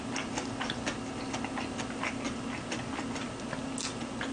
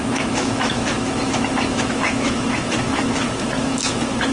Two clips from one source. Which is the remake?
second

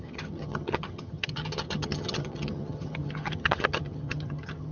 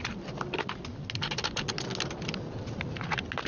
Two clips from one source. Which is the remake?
first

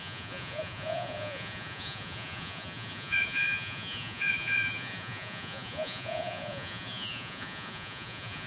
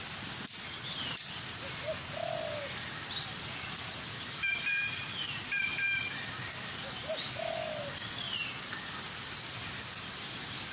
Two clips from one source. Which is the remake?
first